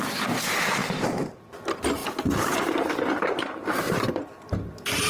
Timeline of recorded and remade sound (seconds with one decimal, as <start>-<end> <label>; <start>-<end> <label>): 0.0-0.8 recorded; 0.8-1.4 remade; 1.4-5.1 recorded